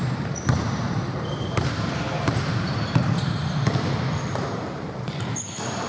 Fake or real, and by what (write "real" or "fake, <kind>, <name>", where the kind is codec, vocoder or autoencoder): fake, vocoder, BigVGAN v2